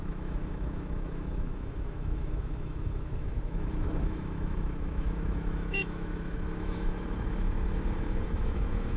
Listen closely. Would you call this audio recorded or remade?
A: remade